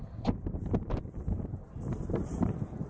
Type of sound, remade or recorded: remade